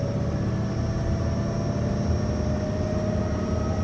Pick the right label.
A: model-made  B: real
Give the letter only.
B